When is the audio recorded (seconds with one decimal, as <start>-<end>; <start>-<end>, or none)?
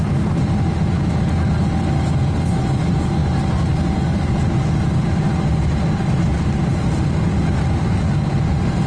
0.0-6.3; 6.8-8.9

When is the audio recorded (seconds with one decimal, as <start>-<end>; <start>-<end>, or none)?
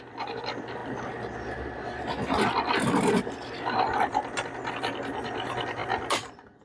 0.8-4.7; 5.8-6.6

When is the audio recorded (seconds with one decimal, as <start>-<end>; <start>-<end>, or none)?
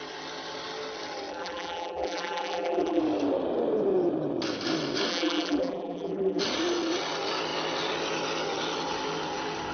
0.0-1.3; 3.0-5.1; 6.4-9.7